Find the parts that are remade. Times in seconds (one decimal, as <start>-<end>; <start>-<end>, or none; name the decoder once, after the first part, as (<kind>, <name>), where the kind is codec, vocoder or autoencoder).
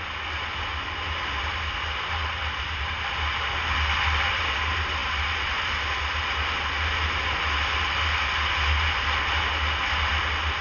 0.7-1.7 (vocoder, BigVGAN v2)